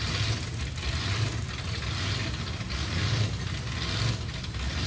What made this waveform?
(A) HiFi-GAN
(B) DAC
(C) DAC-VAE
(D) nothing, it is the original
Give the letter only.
D